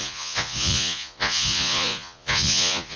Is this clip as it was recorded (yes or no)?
no